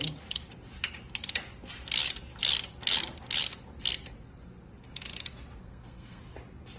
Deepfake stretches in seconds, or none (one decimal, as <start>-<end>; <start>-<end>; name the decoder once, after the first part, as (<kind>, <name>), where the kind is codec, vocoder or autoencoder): 5.6-6.2 (codec, SNAC)